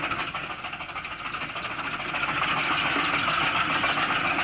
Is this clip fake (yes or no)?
no